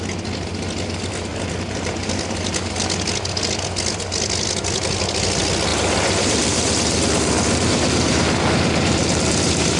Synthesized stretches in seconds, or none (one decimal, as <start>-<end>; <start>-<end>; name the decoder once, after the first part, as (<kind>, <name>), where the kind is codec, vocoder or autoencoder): 1.3-2.0 (vocoder, BigVGAN v2); 5.7-9.8